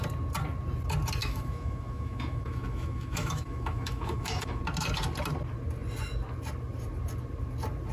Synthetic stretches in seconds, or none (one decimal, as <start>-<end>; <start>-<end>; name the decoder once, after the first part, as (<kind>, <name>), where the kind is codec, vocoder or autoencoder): 1.2-4.6 (autoencoder, DAC-VAE)